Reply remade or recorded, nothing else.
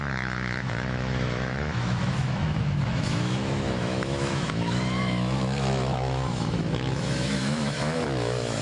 remade